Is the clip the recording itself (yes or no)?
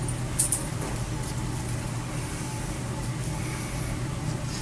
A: yes